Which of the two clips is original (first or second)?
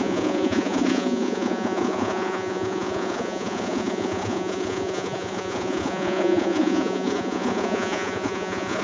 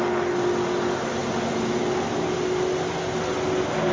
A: second